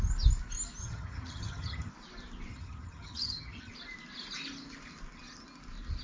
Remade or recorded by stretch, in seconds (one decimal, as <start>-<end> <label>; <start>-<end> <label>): 0.0-0.8 recorded; 0.8-1.9 remade; 1.9-2.5 recorded; 2.5-3.7 remade; 3.7-6.0 recorded